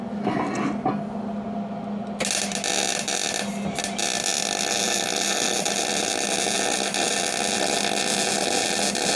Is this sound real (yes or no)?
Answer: yes